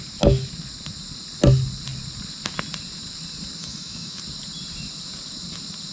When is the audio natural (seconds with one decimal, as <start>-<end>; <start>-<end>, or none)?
0.0-3.6; 4.2-5.9